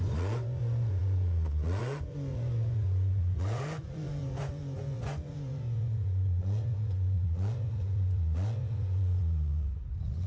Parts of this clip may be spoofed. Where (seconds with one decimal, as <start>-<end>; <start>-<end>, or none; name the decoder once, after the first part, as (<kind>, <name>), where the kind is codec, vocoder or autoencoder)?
0.0-10.3 (vocoder, Vocos)